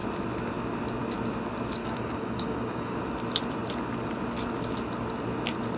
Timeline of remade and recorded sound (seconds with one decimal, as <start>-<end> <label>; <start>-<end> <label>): 0.0-1.8 recorded; 1.8-3.0 remade; 3.0-5.8 recorded